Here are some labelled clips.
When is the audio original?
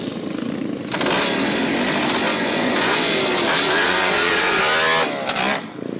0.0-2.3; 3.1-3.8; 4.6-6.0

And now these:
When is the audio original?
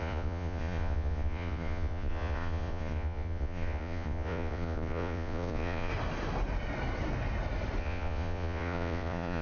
5.9-7.8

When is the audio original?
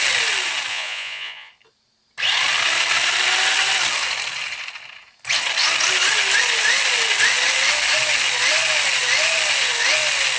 0.0-0.7; 1.5-10.4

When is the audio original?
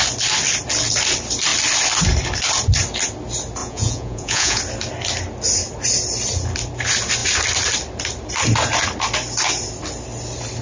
0.0-3.6; 4.6-10.6